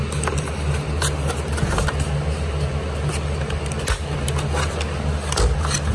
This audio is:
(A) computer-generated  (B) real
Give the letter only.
B